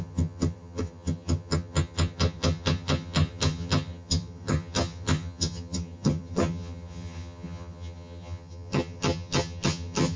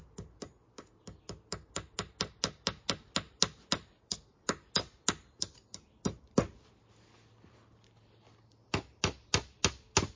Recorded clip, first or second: second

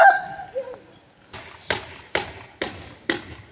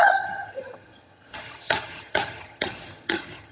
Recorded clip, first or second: first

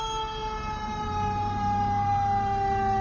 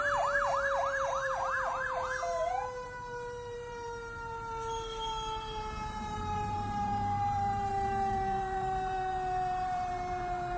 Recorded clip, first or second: first